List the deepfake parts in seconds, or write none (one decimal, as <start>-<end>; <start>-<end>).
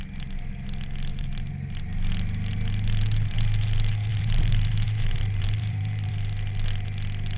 1.1-1.8; 4.1-6.1